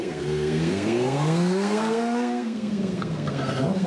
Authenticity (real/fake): fake